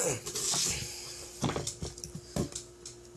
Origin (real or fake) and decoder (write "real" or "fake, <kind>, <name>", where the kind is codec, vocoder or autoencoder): real